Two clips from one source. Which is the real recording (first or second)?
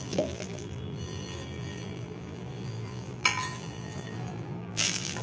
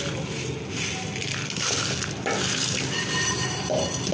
second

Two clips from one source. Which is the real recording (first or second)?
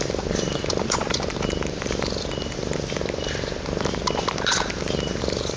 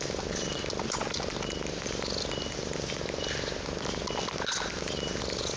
second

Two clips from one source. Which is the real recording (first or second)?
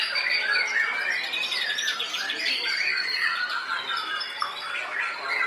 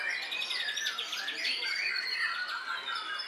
second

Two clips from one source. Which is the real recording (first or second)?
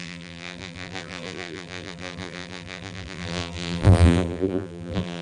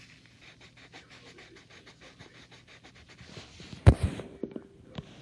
second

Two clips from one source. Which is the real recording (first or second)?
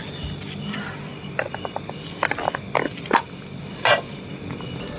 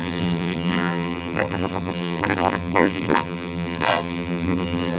first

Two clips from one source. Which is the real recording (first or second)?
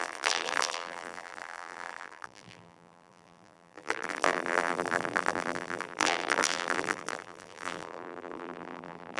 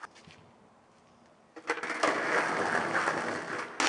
second